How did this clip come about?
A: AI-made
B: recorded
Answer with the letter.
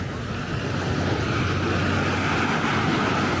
B